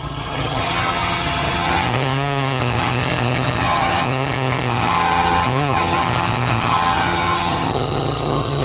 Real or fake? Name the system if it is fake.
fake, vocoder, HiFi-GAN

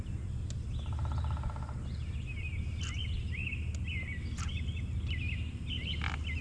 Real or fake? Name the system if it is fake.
real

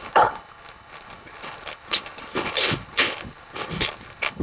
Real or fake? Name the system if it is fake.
fake, codec, HILCodec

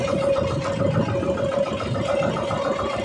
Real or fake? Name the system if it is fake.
real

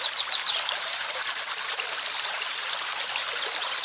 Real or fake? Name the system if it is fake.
real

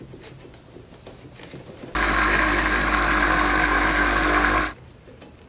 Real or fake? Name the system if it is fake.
real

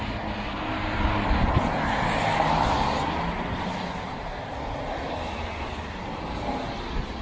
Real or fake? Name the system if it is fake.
real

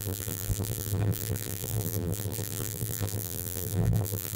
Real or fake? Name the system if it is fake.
fake, vocoder, BigVGAN v2